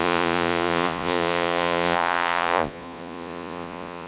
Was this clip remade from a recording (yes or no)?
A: yes